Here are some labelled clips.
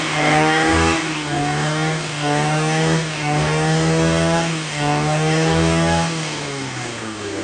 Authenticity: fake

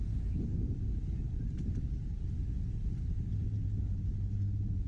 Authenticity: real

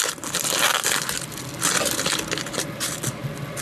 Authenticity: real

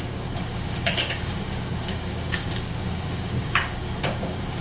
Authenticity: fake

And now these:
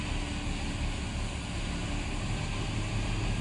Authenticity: real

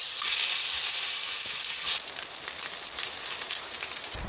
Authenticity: real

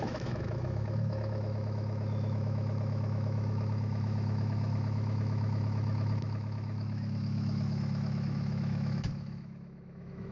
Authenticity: fake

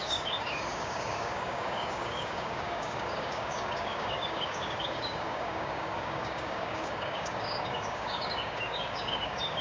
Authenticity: fake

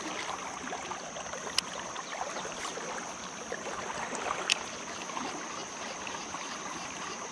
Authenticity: real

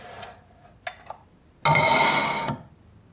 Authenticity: real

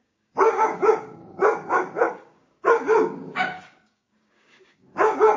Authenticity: fake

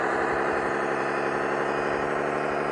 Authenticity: real